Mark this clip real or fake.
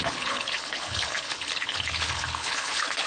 fake